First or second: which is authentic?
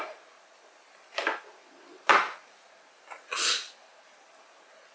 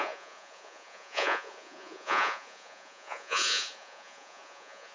first